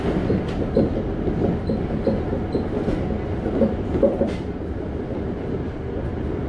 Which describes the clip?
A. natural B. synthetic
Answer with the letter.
A